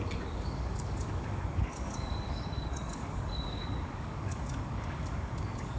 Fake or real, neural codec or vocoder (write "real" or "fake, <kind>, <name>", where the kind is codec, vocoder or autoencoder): fake, codec, DAC